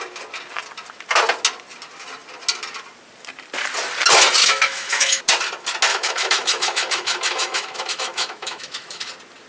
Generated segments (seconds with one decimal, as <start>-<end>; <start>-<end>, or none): 4.4-5.2; 5.9-9.1